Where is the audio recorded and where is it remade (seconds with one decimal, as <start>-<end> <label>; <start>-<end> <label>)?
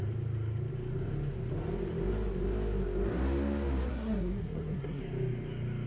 0.0-3.9 recorded; 3.9-5.0 remade; 5.0-5.9 recorded